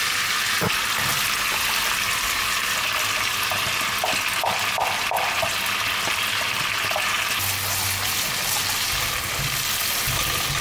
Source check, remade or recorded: recorded